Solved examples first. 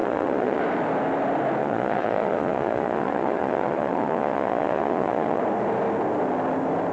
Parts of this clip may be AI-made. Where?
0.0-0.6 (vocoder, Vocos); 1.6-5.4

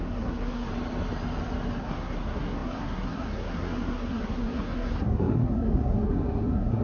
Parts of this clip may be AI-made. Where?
0.0-0.7 (codec, SNAC); 1.8-6.8

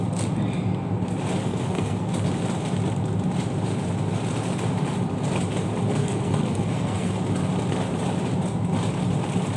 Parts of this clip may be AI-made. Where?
1.4-2.1 (codec, SNAC); 6.0-7.1